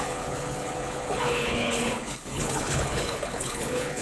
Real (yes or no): no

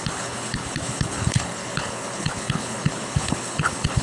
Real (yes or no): no